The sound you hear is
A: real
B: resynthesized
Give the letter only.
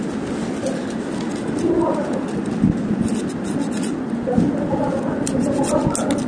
A